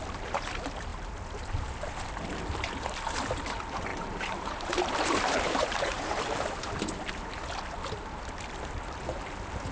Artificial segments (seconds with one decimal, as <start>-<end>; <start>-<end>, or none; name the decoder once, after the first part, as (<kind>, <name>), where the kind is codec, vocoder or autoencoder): 3.9-6.7 (vocoder, BigVGAN v2)